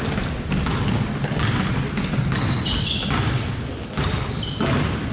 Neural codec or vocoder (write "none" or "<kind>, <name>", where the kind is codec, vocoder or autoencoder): none